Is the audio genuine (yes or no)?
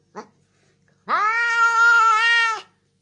yes